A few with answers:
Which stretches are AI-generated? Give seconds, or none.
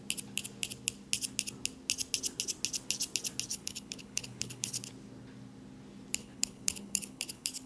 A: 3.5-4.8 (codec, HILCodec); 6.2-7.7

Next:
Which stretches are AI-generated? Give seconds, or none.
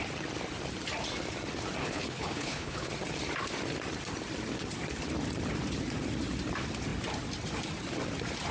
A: 1.8-2.9 (codec, HILCodec)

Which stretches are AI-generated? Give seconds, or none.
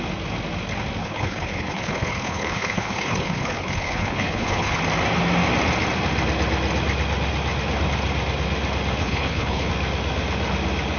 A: 1.0-4.8 (codec, HILCodec); 9.0-9.7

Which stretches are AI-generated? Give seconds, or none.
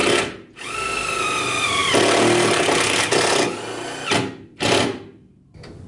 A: none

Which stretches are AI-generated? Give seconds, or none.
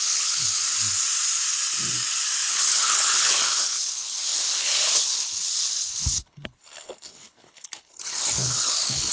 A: 0.0-0.6 (codec, HILCodec); 2.5-9.1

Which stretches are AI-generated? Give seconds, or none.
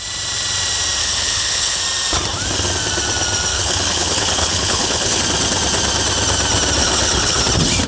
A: 1.0-1.8 (codec, HILCodec); 3.5-5.2; 6.8-7.4